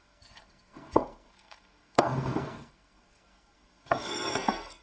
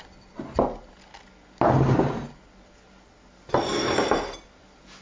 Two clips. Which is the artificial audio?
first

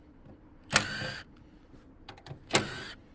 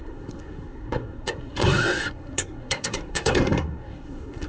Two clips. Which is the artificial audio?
second